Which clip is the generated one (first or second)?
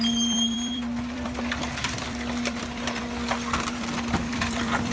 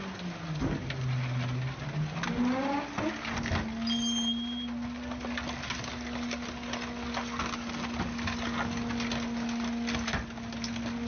first